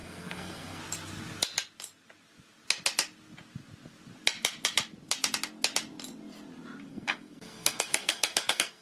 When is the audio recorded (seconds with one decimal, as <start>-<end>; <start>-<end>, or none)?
0.8-6.9